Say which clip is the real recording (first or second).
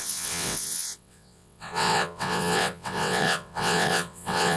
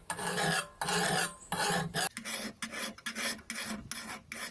second